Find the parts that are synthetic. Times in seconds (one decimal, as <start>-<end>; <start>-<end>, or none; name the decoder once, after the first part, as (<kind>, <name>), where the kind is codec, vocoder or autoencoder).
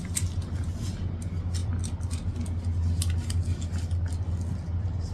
none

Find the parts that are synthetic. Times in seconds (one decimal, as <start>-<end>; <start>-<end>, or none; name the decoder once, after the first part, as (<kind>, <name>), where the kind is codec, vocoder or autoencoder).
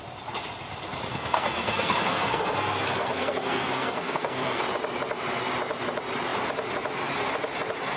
1.1-4.6 (codec, SNAC)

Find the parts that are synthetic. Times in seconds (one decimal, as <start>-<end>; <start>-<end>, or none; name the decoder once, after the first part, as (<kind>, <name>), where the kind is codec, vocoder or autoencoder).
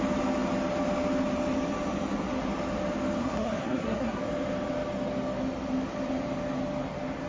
3.2-4.2 (codec, SNAC)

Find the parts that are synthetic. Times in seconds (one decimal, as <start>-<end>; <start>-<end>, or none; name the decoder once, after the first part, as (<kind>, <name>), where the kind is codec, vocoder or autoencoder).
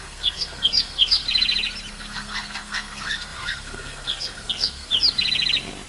0.0-1.2 (codec, SNAC); 1.9-4.9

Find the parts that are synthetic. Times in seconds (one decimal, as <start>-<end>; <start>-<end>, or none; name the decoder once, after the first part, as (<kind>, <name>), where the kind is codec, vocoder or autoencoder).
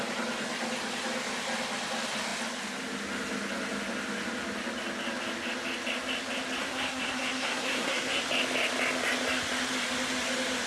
6.6-8.2 (codec, SNAC)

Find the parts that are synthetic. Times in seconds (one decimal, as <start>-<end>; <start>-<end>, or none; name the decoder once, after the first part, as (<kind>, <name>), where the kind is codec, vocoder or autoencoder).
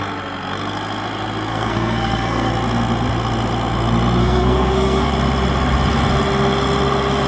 1.5-2.5 (codec, SNAC); 4.2-5.1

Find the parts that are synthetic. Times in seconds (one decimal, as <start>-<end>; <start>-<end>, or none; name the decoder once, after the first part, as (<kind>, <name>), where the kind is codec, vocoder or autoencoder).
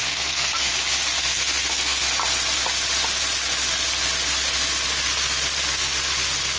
0.0-0.7 (codec, SNAC); 1.2-2.1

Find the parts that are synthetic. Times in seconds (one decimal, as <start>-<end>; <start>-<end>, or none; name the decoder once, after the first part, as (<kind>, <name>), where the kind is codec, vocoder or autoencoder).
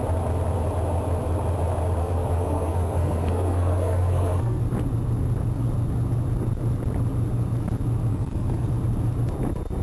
2.0-4.6 (codec, SNAC); 8.1-8.7